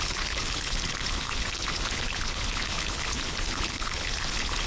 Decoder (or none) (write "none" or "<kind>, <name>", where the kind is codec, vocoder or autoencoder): codec, HILCodec